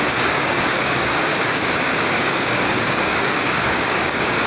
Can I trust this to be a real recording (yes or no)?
no